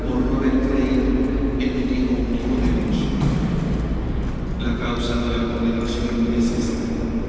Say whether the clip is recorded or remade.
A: recorded